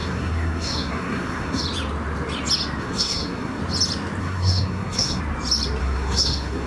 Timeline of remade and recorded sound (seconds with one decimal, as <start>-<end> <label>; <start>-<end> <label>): 0.0-1.6 remade; 1.6-2.8 recorded; 2.8-3.6 remade; 3.6-4.2 recorded; 4.2-5.2 remade; 5.2-5.8 recorded; 5.8-6.7 remade